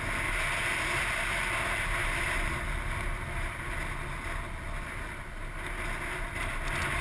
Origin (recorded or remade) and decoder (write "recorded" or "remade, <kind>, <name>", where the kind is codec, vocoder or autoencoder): recorded